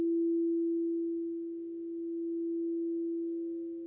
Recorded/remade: recorded